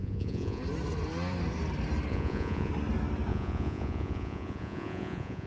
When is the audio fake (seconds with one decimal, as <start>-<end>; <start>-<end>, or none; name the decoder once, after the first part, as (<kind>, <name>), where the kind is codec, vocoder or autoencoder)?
0.0-0.6 (vocoder, Vocos); 2.1-2.7; 3.3-5.5